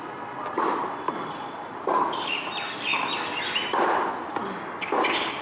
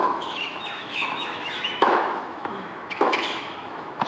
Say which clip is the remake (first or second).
second